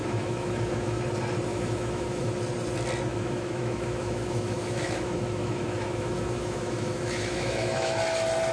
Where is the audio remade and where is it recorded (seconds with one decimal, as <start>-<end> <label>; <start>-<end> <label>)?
0.0-1.0 remade; 1.0-1.5 recorded; 1.5-2.3 remade; 2.3-3.1 recorded; 3.1-8.0 remade; 8.0-8.5 recorded

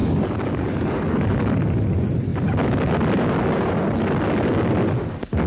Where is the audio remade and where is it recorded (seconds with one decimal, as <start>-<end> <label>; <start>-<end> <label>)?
0.0-1.6 remade; 1.6-5.5 recorded

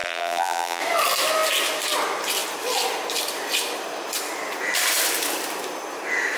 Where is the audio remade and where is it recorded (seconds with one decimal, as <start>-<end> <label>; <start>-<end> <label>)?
0.0-0.8 remade; 0.8-6.4 recorded

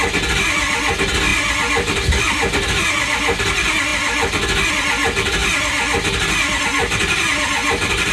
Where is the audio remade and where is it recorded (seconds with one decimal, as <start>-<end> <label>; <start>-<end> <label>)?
0.0-8.1 recorded

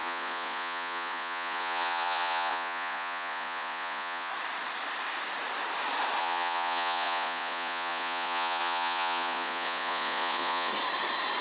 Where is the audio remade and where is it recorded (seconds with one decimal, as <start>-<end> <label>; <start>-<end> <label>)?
0.0-4.3 remade; 4.3-6.2 recorded; 6.2-10.7 remade; 10.7-11.4 recorded

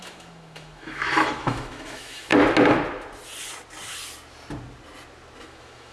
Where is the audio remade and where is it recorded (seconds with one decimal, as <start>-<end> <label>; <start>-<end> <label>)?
0.0-2.3 remade; 2.3-5.4 recorded; 5.4-5.9 remade

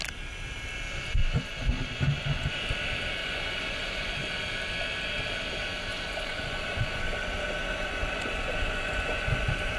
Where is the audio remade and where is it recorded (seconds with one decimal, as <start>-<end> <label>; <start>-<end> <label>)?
0.0-1.2 recorded; 1.2-2.5 remade; 2.5-3.2 recorded; 3.2-4.1 remade; 4.1-5.9 recorded; 5.9-7.0 remade; 7.0-7.7 recorded; 7.7-9.8 remade

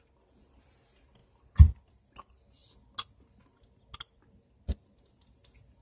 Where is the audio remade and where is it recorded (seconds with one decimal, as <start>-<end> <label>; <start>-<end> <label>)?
0.0-5.8 recorded